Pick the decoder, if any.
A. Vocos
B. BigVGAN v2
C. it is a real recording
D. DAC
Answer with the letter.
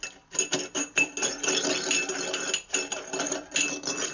C